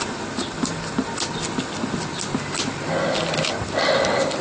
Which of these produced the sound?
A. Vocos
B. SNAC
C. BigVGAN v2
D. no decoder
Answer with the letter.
D